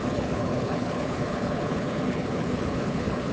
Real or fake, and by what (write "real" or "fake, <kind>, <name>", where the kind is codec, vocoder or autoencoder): fake, codec, HILCodec